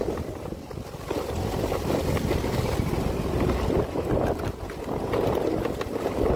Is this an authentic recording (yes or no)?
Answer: yes